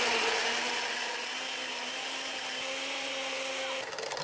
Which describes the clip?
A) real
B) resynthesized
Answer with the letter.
A